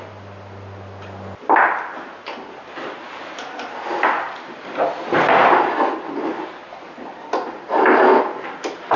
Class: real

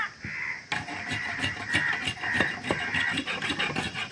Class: real